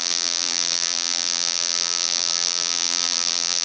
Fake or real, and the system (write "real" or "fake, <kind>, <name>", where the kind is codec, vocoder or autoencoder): fake, vocoder, BigVGAN v2